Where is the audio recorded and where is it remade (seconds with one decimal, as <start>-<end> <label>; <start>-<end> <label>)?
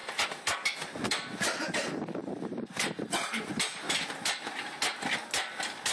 0.0-2.2 recorded; 2.2-3.1 remade; 3.1-5.9 recorded